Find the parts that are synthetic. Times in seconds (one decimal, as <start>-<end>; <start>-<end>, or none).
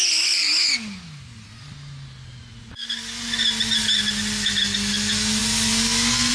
none